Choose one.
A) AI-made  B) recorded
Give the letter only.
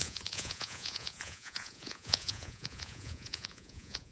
A